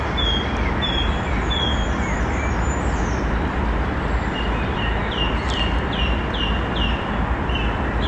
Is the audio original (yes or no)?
yes